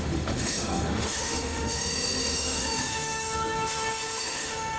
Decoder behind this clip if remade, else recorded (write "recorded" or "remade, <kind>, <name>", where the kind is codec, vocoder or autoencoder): remade, autoencoder, DAC-VAE